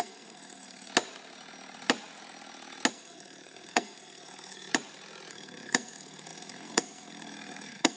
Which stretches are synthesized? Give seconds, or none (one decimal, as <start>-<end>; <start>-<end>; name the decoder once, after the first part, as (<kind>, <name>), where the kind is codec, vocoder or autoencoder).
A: 0.0-0.9 (codec, SNAC); 2.9-4.7; 5.3-8.0